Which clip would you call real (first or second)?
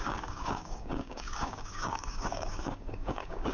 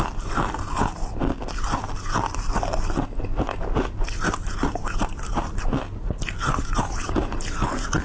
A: second